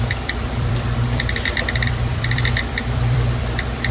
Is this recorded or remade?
remade